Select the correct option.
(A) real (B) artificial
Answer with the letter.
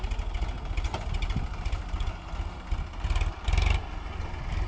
A